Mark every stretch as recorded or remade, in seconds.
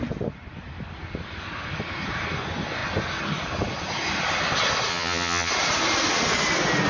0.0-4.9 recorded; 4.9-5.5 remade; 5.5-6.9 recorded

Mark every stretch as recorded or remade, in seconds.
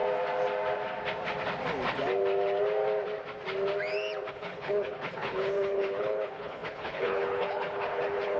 0.0-4.3 recorded; 4.3-8.4 remade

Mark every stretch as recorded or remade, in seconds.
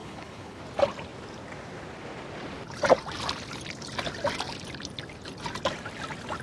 0.0-0.6 remade; 0.6-6.4 recorded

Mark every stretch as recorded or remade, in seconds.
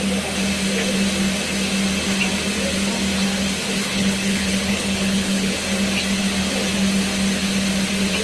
0.0-3.8 recorded; 3.8-5.5 remade; 5.5-8.2 recorded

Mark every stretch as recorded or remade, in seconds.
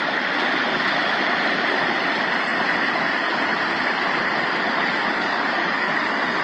0.0-4.9 recorded; 4.9-5.9 remade; 5.9-6.4 recorded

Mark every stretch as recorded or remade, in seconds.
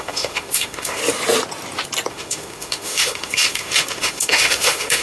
0.0-1.0 remade; 1.0-2.1 recorded; 2.1-5.0 remade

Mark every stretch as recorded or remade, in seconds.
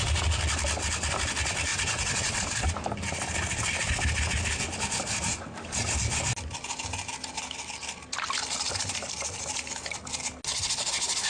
0.0-1.7 recorded; 1.7-2.4 remade; 2.4-11.3 recorded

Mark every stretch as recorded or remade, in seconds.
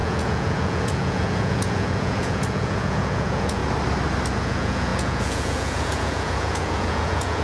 0.0-3.6 remade; 3.6-4.3 recorded; 4.3-7.4 remade